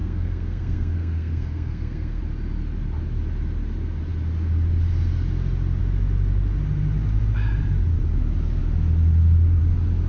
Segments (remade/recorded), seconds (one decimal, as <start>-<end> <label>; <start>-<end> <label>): 0.0-2.2 remade; 2.2-10.1 recorded